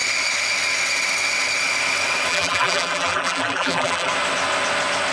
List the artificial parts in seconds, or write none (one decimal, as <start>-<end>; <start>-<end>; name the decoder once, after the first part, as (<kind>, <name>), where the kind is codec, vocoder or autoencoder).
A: 2.3-4.1 (vocoder, BigVGAN v2)